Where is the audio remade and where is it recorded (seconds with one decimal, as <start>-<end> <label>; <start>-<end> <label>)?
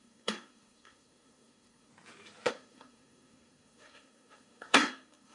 0.0-1.9 remade; 1.9-2.5 recorded; 2.5-5.3 remade